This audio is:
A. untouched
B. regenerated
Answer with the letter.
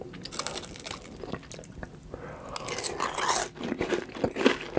A